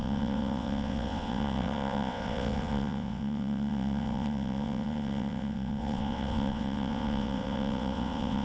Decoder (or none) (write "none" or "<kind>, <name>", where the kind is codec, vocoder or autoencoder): vocoder, WaveNeXt